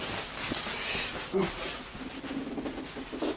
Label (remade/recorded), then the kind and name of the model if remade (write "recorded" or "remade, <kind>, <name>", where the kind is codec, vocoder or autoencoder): recorded